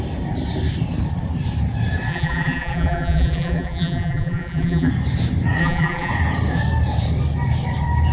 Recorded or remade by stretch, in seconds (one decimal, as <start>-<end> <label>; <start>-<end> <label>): 0.0-2.1 recorded; 2.1-4.9 remade; 4.9-5.6 recorded; 5.6-6.1 remade; 6.1-8.1 recorded